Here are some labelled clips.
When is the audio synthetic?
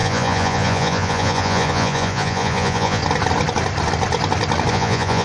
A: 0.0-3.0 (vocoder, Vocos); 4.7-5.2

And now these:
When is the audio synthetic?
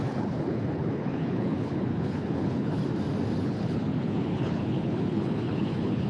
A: 0.0-2.8 (codec, HILCodec); 3.4-6.1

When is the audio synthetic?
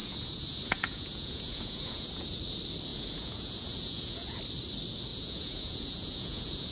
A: 0.0-2.4 (vocoder, Vocos); 2.9-4.4; 5.1-6.7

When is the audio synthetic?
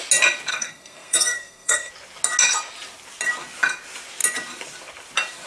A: 0.5-1.9 (codec, SNAC)